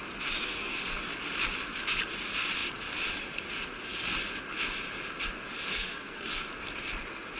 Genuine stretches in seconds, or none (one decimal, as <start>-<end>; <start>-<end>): 0.0-0.4; 1.0-5.7; 6.5-7.4